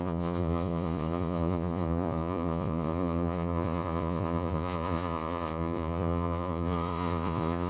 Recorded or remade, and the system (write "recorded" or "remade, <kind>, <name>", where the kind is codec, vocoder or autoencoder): remade, vocoder, Vocos